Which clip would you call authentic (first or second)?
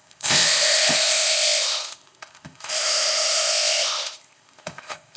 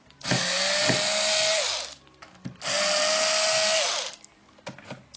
second